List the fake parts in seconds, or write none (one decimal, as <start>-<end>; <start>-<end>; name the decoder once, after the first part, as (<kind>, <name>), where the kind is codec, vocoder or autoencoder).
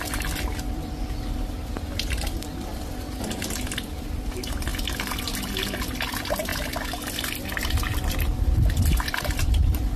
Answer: none